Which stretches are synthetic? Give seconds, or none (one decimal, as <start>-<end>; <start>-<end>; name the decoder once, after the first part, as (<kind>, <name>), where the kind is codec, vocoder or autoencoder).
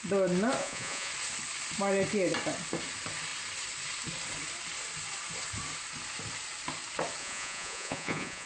0.6-1.1 (vocoder, Vocos); 7.2-8.5